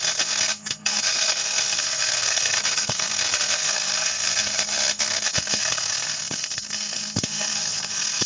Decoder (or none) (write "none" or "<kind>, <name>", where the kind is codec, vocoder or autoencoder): codec, SNAC